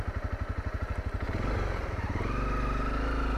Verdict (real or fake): real